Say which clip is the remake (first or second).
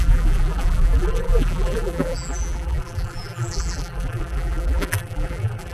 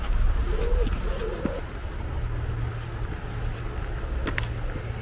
first